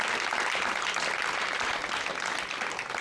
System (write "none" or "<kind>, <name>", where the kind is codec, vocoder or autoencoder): none